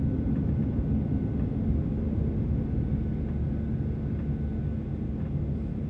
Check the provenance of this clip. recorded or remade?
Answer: recorded